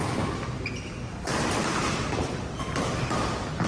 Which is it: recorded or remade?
recorded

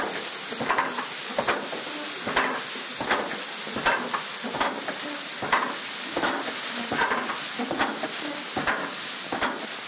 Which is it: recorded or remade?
recorded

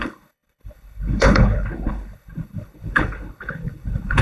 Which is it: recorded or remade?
remade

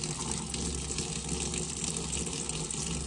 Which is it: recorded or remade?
recorded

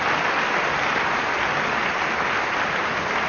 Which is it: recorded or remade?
recorded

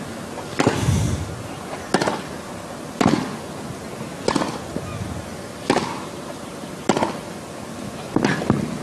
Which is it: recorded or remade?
recorded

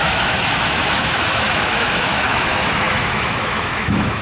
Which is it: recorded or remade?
remade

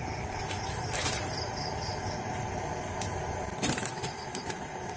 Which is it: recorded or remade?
remade